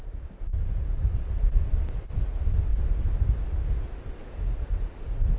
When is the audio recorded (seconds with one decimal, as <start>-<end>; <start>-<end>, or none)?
0.0-0.5; 1.4-2.7; 3.4-4.2; 4.8-5.4